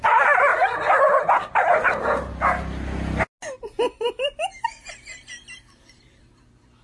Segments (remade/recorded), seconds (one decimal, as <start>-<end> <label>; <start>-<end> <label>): 0.0-0.5 remade; 0.5-3.6 recorded; 3.6-6.8 remade